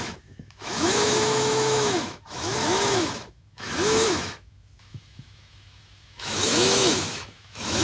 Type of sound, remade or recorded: remade